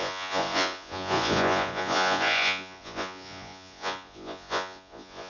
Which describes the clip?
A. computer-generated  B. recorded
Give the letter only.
A